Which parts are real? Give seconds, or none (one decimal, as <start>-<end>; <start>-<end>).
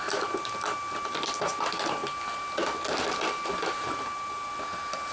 0.0-5.1